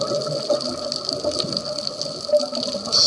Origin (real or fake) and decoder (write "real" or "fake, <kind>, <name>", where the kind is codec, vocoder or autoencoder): real